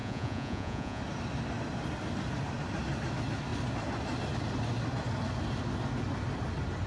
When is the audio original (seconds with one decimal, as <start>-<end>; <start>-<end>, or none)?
1.0-6.9